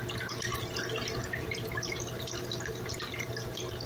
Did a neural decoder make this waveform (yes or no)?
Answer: no